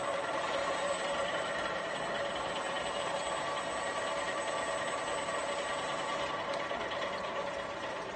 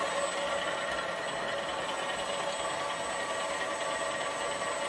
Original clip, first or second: second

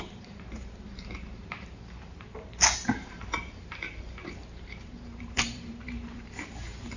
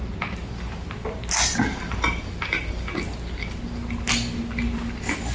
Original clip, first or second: second